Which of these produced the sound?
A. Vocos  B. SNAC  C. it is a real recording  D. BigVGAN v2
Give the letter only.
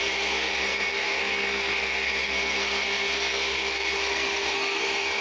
B